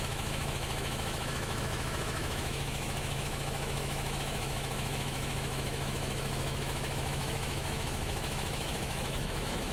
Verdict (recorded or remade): remade